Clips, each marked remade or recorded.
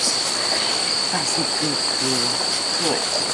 recorded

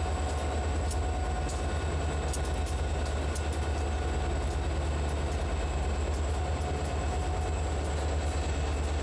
recorded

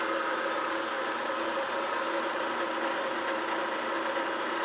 recorded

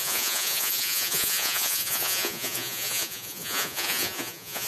remade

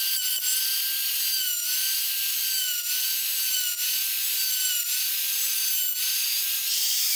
recorded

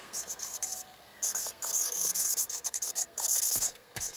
remade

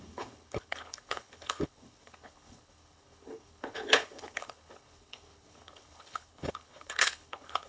remade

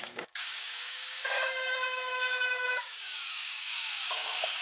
remade